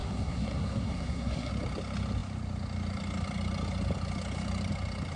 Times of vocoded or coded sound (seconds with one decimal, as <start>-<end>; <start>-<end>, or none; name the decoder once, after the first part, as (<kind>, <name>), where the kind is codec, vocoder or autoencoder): 0.0-1.5 (codec, SNAC)